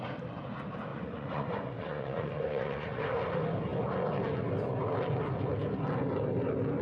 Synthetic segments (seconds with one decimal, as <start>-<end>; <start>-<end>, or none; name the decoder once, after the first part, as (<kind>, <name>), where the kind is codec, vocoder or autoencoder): 0.9-3.0 (vocoder, Vocos)